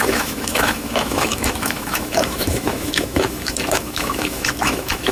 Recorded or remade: remade